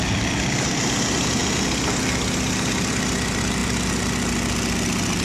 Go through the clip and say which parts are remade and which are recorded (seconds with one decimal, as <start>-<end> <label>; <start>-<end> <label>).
0.0-5.2 recorded